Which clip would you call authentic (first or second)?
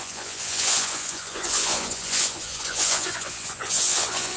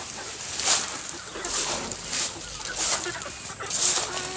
second